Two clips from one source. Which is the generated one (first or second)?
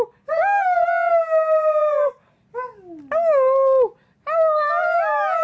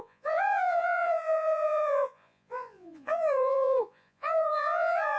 second